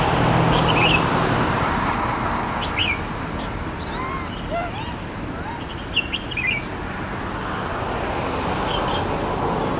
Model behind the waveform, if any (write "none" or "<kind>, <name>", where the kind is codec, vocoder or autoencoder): none